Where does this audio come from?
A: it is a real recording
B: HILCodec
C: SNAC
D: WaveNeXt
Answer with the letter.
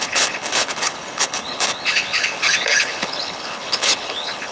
B